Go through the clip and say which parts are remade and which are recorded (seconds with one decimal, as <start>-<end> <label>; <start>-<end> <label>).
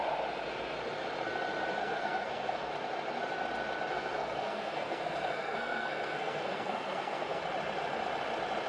0.0-1.8 recorded; 1.8-2.7 remade; 2.7-3.9 recorded; 3.9-7.4 remade; 7.4-8.7 recorded